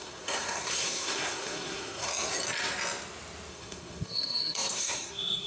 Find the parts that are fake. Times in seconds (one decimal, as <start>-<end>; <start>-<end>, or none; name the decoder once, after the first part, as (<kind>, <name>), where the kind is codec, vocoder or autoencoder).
0.0-2.1 (codec, SNAC); 3.5-5.5